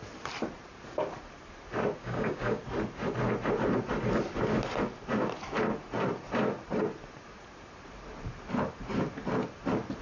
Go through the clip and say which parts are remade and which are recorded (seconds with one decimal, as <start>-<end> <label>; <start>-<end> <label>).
0.0-2.0 recorded; 2.0-2.6 remade; 2.6-10.0 recorded